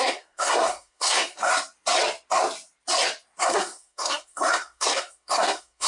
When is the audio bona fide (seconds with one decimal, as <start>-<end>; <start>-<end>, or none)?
1.5-3.4